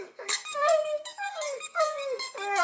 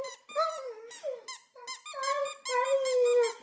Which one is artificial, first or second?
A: first